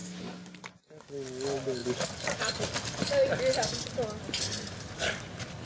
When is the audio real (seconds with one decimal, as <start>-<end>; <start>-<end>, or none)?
0.0-5.7